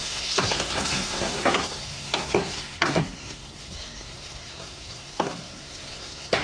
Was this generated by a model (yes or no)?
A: yes